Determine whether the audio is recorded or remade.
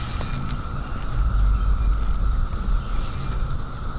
recorded